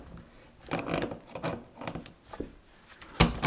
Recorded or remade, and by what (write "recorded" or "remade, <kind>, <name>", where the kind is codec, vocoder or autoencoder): recorded